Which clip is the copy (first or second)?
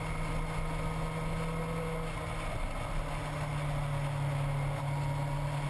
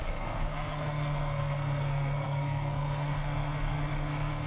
second